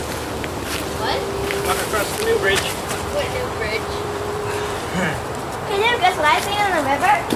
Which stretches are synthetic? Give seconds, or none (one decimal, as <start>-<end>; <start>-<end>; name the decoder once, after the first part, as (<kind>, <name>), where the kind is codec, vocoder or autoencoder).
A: 1.4-5.8 (vocoder, BigVGAN v2)